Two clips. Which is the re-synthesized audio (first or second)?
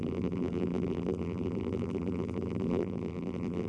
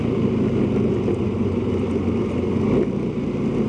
first